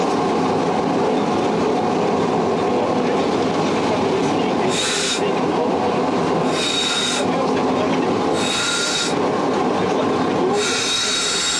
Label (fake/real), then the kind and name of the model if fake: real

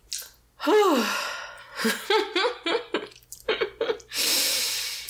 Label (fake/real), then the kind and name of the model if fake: real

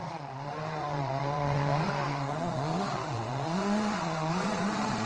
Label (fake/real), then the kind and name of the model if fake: fake, vocoder, Vocos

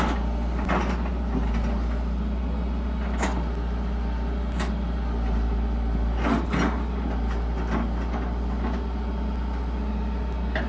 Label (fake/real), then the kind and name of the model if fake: real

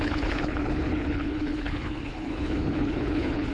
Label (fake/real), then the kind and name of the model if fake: fake, codec, HILCodec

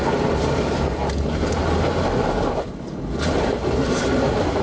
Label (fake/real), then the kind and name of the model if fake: real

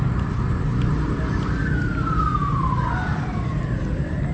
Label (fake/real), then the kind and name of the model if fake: real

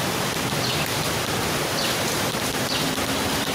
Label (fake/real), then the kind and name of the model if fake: real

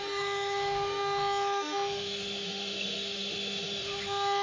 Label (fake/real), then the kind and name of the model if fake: fake, autoencoder, DAC-VAE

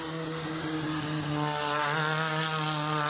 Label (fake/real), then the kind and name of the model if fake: real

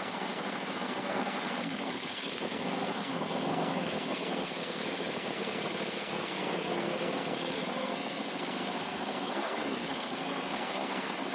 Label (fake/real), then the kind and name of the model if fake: fake, codec, SNAC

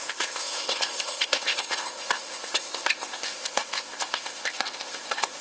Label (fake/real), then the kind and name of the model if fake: fake, codec, ZipCodec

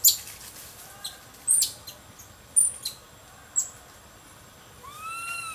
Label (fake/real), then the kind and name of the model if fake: real